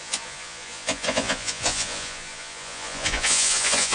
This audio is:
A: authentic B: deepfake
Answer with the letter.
B